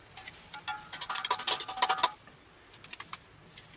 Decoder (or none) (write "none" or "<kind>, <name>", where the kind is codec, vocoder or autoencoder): none